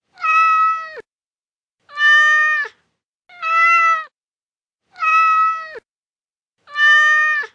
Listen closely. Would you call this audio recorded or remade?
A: recorded